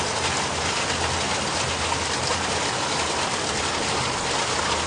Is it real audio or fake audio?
real